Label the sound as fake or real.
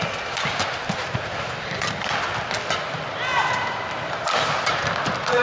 real